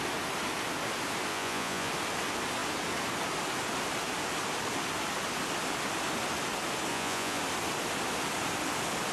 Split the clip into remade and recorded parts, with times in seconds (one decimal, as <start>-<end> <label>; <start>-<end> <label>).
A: 0.0-1.3 recorded; 1.3-1.9 remade; 1.9-6.9 recorded; 6.9-7.4 remade; 7.4-9.1 recorded